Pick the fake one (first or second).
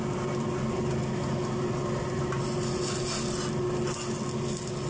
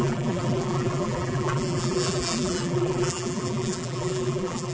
second